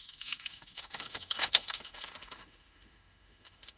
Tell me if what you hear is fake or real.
fake